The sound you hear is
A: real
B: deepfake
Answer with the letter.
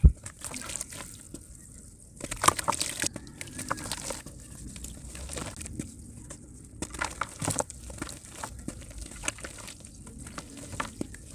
A